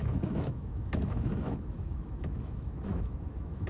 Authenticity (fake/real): fake